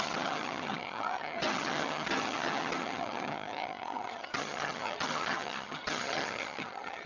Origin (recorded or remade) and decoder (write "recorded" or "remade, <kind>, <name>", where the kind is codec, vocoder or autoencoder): remade, vocoder, HiFi-GAN